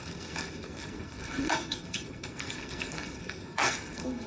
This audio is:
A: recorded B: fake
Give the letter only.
B